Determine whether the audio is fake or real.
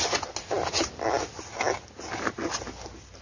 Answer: real